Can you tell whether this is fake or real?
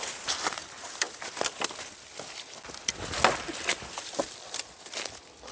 real